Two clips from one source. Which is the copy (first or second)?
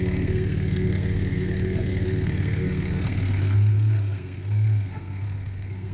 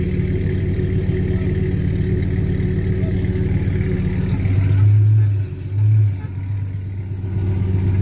first